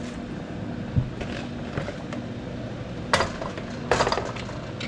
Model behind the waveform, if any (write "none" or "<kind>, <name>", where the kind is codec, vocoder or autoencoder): none